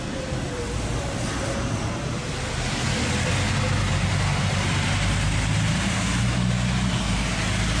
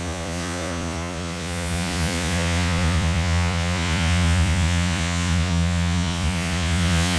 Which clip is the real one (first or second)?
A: first